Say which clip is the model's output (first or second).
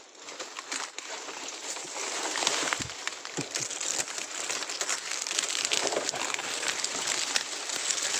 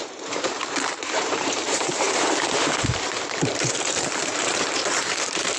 second